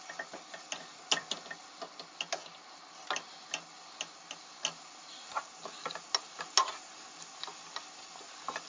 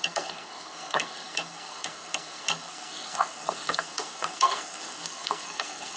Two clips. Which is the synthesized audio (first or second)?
second